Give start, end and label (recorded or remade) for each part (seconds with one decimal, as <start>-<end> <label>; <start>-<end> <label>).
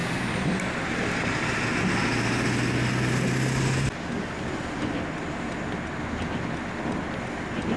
0.0-7.8 recorded